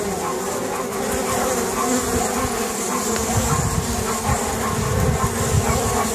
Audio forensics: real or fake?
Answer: real